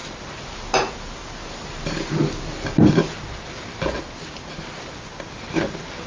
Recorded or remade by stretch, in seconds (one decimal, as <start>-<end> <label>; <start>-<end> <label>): 0.0-6.1 recorded